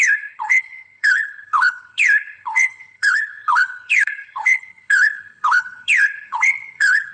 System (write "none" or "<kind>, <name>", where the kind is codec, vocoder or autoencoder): codec, HILCodec